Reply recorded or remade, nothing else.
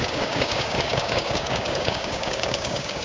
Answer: remade